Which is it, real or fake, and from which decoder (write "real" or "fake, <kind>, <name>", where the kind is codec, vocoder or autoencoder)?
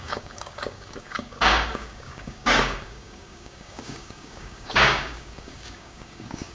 fake, codec, DAC